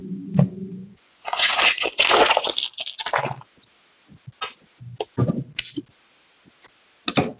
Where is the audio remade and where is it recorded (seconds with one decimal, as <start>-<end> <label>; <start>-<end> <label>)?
0.0-2.5 remade; 2.5-7.4 recorded